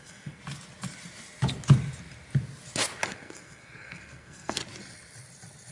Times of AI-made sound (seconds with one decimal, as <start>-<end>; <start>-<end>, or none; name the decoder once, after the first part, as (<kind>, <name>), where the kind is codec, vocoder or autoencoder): 0.0-0.4 (codec, SNAC); 3.1-4.6